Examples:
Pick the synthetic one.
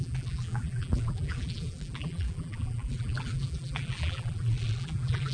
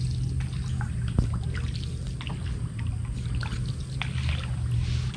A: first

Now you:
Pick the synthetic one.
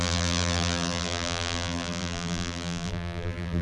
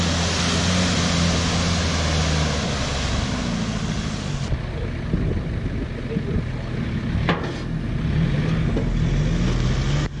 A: first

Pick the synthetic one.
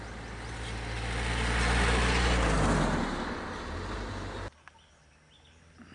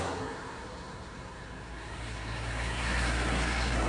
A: second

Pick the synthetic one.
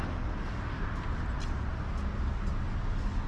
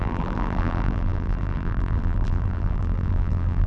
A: second